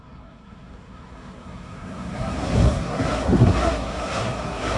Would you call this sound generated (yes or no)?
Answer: yes